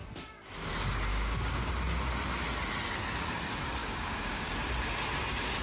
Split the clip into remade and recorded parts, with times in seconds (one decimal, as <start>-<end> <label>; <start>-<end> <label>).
0.0-1.1 recorded; 1.1-1.7 remade; 1.7-3.8 recorded; 3.8-4.5 remade; 4.5-5.6 recorded